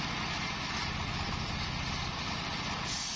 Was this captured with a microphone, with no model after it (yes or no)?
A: yes